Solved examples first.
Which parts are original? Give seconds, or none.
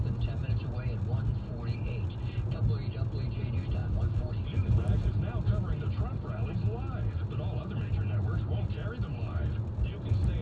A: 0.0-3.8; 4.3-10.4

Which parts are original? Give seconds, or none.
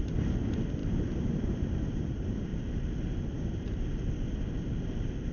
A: 2.5-5.3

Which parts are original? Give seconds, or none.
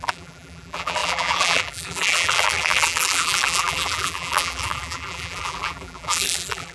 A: none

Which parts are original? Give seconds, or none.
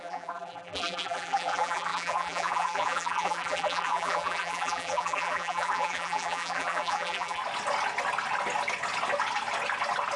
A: 7.4-10.2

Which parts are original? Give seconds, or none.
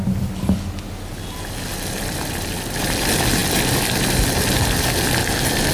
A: 0.0-5.7